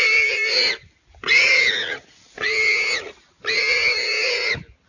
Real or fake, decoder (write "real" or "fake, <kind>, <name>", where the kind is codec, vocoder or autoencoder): real